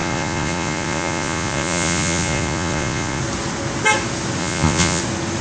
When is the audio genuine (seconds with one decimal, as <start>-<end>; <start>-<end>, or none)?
3.2-4.4; 5.0-5.4